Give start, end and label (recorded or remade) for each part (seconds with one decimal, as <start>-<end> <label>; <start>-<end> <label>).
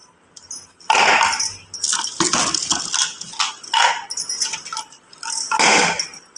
0.0-6.4 recorded